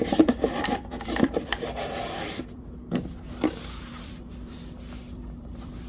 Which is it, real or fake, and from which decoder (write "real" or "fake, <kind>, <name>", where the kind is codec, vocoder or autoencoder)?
fake, vocoder, BigVGAN v2